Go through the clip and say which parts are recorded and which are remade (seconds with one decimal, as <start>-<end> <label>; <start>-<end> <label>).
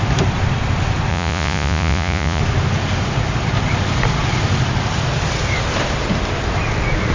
0.0-1.1 recorded; 1.1-2.4 remade; 2.4-7.1 recorded